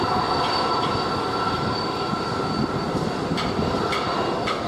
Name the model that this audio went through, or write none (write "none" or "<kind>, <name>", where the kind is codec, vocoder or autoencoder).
none